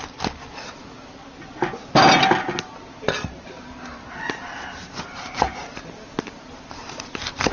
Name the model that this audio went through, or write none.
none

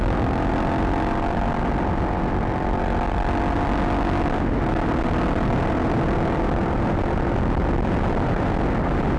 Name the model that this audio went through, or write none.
none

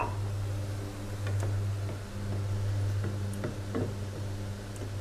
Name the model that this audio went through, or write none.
none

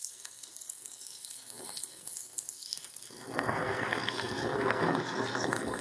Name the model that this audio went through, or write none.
codec, SNAC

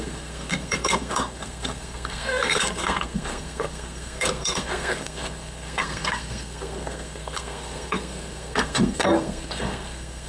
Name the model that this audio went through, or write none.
codec, SNAC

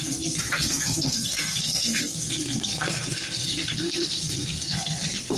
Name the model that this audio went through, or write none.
codec, SNAC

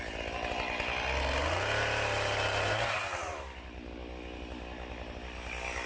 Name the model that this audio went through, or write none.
none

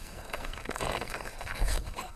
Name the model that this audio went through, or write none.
codec, SNAC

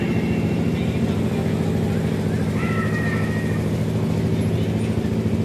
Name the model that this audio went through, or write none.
none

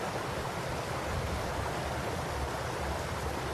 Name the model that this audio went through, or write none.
none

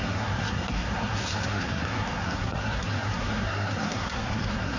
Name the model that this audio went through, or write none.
codec, SNAC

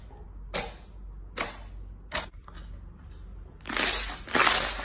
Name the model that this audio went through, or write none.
none